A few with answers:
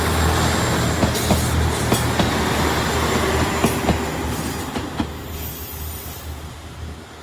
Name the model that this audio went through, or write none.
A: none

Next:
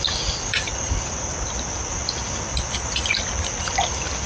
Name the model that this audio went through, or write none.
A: none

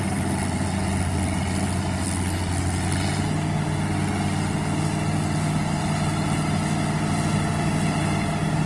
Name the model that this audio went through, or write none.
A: none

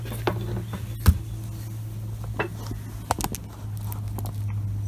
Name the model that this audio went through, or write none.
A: none